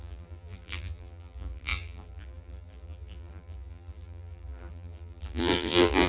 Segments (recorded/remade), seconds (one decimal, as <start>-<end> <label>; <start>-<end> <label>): 0.0-6.1 remade